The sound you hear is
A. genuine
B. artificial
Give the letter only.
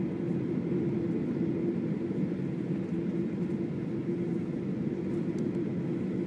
A